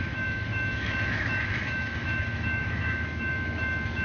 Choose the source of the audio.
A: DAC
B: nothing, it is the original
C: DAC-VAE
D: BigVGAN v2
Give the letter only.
C